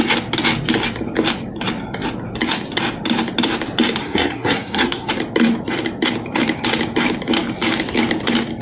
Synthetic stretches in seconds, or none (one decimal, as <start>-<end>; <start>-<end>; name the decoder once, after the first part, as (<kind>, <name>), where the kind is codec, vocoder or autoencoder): 4.0-5.1 (codec, SNAC)